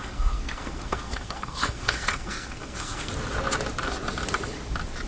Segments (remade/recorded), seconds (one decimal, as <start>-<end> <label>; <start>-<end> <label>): 0.0-3.1 remade; 3.1-5.1 recorded